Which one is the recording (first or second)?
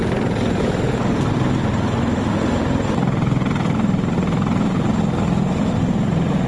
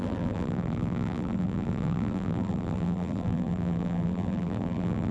first